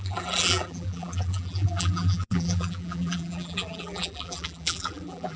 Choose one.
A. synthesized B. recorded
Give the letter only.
A